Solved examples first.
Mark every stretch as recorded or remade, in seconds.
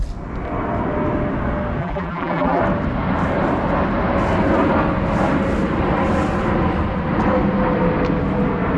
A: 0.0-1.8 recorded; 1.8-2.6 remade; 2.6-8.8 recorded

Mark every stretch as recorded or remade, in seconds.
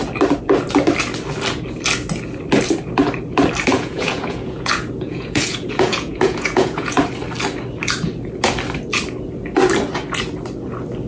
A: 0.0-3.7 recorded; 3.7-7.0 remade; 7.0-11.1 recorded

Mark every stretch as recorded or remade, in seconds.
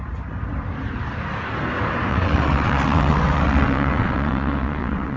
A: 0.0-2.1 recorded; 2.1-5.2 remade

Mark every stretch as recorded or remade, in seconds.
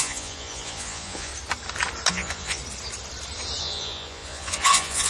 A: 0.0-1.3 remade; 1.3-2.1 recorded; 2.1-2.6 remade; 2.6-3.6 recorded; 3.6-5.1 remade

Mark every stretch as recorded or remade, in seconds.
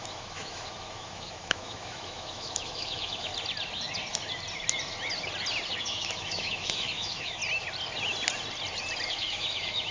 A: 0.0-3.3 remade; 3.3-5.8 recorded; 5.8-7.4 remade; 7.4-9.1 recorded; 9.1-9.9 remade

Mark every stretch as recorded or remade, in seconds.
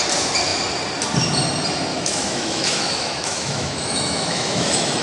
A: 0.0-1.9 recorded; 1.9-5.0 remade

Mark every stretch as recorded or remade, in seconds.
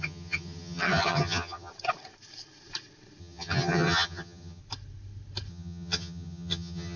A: 0.0-1.7 remade; 1.7-3.2 recorded; 3.2-4.6 remade; 4.6-5.5 recorded; 5.5-7.0 remade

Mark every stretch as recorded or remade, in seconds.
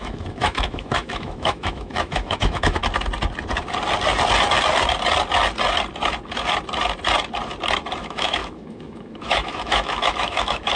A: 0.0-2.8 remade; 2.8-8.0 recorded; 8.0-10.8 remade